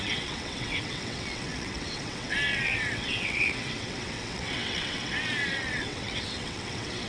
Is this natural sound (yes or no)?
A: no